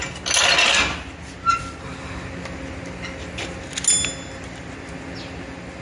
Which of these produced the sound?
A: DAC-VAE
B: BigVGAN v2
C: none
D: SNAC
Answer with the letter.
C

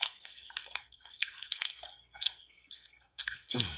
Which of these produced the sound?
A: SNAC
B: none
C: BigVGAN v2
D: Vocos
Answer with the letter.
A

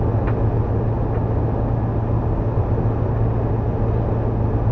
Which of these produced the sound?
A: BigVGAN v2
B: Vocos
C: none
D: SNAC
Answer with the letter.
C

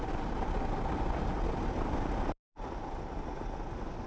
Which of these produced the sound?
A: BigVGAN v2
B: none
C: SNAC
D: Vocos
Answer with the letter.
B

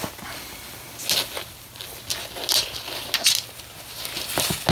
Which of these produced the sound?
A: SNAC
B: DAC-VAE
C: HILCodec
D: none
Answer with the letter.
D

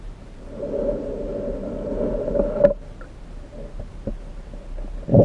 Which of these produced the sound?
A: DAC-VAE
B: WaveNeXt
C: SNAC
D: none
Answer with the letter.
D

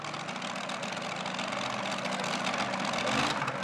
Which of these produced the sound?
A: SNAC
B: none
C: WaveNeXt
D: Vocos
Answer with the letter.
B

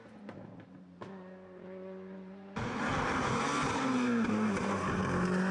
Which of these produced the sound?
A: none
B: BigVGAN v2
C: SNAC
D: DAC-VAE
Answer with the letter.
A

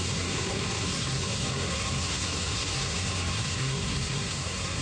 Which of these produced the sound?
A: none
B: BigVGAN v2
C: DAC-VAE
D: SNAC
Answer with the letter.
D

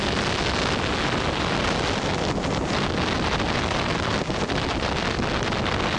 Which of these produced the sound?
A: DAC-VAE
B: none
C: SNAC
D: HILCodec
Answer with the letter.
B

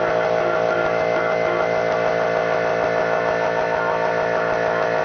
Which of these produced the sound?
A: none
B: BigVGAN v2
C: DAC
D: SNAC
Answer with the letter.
A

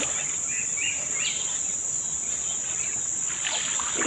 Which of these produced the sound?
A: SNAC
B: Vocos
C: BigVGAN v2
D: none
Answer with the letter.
D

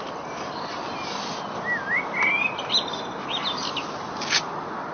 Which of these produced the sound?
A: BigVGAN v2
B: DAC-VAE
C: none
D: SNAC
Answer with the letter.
C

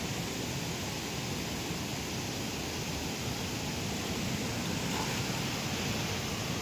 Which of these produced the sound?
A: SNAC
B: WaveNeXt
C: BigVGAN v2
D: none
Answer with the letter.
D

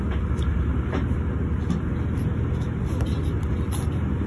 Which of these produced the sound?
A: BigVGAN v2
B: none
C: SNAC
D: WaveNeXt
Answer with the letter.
B